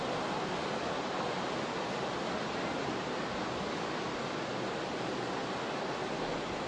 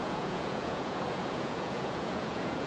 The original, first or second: first